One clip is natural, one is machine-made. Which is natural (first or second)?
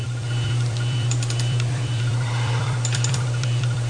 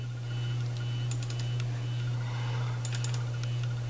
second